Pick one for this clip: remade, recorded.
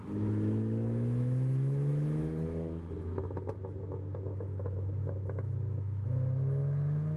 remade